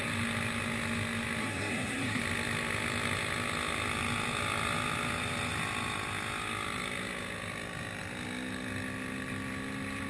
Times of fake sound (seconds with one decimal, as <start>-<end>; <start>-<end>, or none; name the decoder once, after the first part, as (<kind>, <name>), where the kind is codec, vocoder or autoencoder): 1.4-2.2 (codec, SNAC)